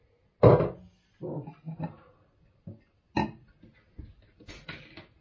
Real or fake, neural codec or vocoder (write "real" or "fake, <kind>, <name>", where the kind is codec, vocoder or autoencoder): real